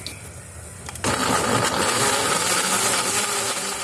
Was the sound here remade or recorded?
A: recorded